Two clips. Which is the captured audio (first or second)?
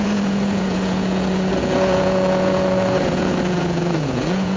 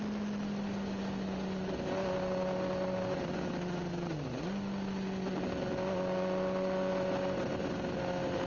second